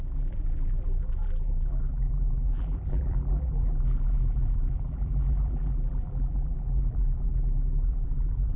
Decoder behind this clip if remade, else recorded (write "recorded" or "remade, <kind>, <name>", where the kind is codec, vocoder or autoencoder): remade, vocoder, BigVGAN v2